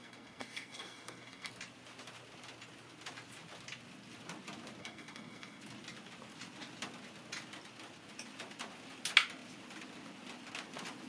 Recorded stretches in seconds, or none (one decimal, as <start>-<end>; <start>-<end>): 1.5-4.8; 5.6-11.1